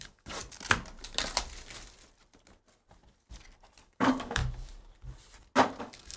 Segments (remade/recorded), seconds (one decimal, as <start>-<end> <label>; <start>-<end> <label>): 0.0-0.4 remade; 0.4-3.8 recorded; 3.8-4.4 remade; 4.4-5.8 recorded; 5.8-6.2 remade